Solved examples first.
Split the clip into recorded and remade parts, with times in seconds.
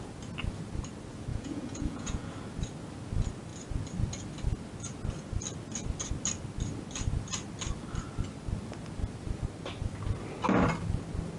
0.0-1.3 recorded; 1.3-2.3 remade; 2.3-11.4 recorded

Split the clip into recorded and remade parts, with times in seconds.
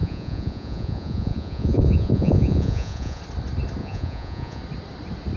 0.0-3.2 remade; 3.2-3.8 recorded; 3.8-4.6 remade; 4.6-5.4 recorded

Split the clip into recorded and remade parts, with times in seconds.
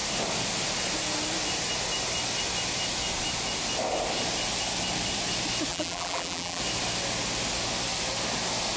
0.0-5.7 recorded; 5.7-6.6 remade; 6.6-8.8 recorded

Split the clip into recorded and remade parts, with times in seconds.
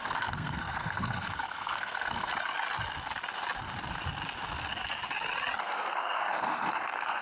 0.0-2.3 remade; 2.3-5.6 recorded; 5.6-7.2 remade